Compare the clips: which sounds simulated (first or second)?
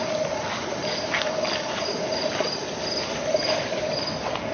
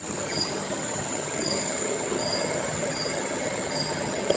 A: second